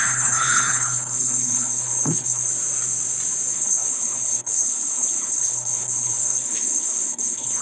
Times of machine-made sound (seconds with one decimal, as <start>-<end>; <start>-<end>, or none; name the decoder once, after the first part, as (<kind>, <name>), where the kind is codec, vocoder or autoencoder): 0.0-2.5 (codec, HILCodec); 3.5-7.6